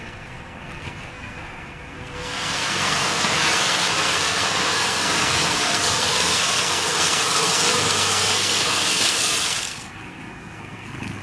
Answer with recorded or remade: remade